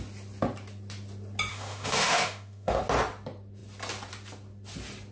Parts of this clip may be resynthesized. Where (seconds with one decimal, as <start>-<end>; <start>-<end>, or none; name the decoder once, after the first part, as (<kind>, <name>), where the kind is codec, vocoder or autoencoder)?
1.5-2.8 (autoencoder, DAC-VAE)